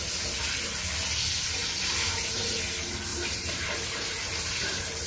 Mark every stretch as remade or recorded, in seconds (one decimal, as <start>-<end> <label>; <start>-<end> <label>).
0.0-1.6 recorded; 1.6-2.6 remade; 2.6-3.1 recorded; 3.1-4.6 remade; 4.6-5.1 recorded